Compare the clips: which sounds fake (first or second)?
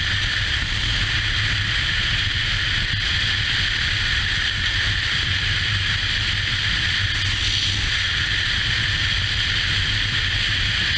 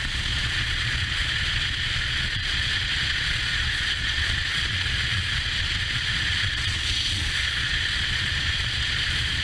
second